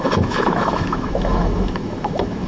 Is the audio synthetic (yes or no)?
yes